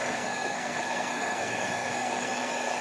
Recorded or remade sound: remade